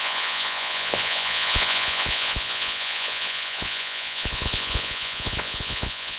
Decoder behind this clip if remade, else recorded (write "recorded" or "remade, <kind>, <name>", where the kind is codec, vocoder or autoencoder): remade, vocoder, Vocos